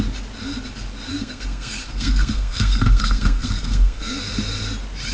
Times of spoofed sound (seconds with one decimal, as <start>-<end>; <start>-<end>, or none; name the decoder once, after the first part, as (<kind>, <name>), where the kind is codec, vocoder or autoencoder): 1.1-4.2 (codec, SNAC)